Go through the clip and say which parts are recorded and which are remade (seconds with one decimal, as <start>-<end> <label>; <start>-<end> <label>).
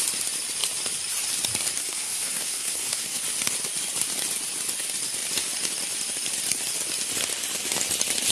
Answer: 0.0-1.8 recorded; 1.8-3.2 remade; 3.2-8.3 recorded